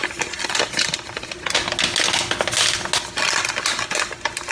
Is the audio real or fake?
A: real